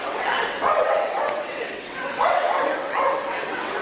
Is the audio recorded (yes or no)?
no